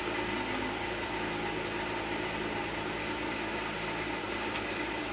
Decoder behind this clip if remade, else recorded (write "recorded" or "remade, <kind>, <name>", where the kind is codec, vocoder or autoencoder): recorded